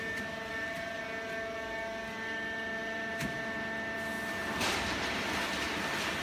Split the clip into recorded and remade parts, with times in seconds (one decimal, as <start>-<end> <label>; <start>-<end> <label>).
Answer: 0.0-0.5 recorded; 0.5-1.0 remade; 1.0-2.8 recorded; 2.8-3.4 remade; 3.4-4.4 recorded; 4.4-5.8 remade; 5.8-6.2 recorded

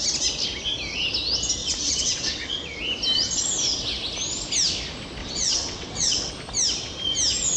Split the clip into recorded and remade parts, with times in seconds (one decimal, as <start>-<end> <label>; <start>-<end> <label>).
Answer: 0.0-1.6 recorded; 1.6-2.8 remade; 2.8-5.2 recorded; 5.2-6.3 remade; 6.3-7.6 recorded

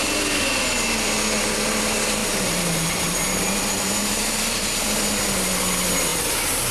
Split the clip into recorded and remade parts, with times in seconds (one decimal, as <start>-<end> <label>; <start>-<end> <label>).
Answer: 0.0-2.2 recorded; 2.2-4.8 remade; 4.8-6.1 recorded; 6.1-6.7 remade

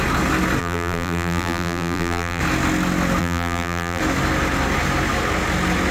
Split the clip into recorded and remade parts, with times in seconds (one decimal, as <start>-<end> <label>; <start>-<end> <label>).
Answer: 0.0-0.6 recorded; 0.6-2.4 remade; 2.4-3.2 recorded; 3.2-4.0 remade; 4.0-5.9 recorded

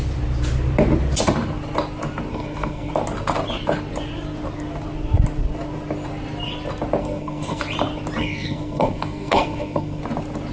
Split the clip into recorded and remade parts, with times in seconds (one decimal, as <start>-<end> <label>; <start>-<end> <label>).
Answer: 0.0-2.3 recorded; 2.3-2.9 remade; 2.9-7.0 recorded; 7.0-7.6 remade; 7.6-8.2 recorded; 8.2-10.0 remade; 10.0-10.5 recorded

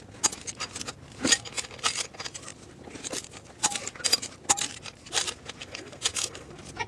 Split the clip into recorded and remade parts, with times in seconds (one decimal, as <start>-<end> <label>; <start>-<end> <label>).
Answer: 0.0-5.6 recorded; 5.6-6.5 remade; 6.5-6.9 recorded